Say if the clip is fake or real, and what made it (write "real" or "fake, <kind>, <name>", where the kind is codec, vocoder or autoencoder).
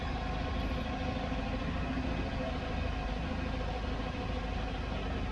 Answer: real